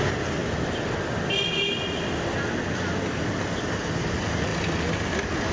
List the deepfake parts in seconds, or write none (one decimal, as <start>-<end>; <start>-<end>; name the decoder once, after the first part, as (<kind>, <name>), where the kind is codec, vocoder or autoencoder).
none